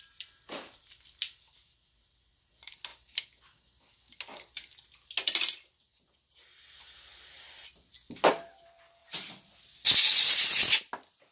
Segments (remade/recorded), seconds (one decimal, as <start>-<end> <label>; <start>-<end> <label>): 0.0-11.3 recorded